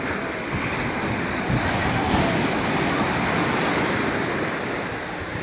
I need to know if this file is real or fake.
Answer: real